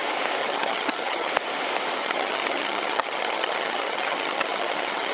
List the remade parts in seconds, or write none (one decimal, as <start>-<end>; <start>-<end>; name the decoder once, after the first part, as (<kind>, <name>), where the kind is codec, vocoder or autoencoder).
0.4-1.3 (vocoder, HiFi-GAN); 2.0-5.1